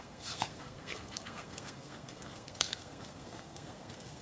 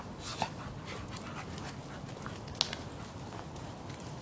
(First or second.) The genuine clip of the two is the second